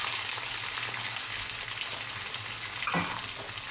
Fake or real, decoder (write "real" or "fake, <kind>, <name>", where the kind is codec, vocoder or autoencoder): real